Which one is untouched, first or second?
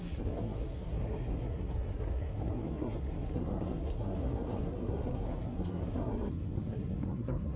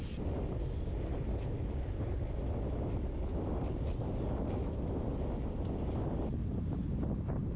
second